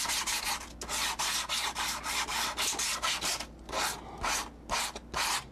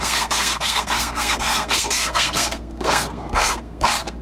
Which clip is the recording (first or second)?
first